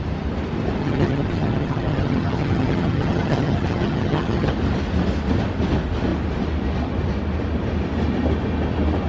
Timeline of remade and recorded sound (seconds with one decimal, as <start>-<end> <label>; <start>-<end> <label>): 0.0-0.8 recorded; 0.8-4.5 remade; 4.5-9.1 recorded